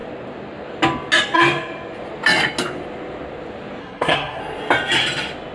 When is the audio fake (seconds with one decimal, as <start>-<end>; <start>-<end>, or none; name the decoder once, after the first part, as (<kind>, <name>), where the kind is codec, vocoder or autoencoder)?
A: 3.8-4.4 (codec, SNAC)